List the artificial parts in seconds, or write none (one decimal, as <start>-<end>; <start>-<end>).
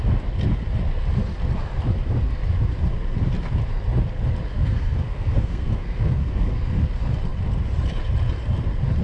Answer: 4.5-6.8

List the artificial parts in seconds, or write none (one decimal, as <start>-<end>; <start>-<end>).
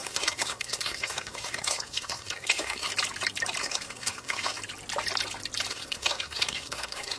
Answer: 0.0-2.9; 3.6-4.6; 5.7-7.2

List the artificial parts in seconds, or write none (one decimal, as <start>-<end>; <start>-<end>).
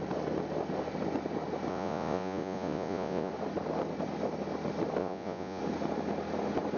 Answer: 1.7-3.3; 5.0-5.6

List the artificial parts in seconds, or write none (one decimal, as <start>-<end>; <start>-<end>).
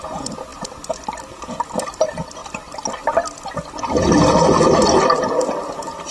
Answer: none